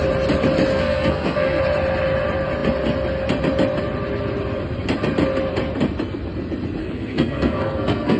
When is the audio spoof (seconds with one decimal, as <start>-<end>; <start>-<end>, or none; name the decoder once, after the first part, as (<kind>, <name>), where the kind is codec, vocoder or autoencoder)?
0.7-1.6 (codec, SNAC); 6.8-8.2